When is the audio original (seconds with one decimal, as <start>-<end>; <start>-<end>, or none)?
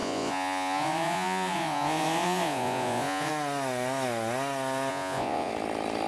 3.3-4.9; 5.5-6.1